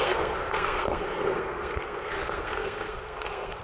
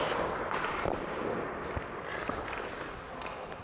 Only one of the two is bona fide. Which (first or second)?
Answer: second